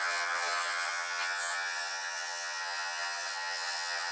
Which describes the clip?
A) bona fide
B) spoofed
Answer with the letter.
B